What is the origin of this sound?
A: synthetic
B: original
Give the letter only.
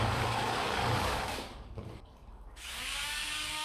A